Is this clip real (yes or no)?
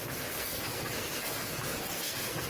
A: no